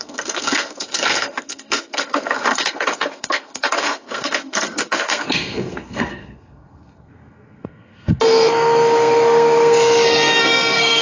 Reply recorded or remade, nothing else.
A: remade